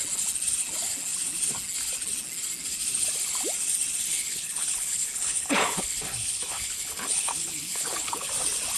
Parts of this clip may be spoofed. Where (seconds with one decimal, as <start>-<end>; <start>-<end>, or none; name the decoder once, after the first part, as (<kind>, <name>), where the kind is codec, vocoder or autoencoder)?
4.1-8.3 (codec, HILCodec)